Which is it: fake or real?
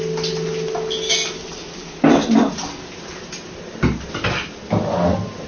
real